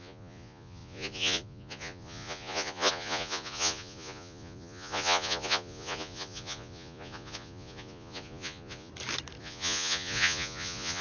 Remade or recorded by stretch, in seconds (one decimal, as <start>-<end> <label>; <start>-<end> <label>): 0.0-8.9 remade; 8.9-9.4 recorded; 9.4-11.0 remade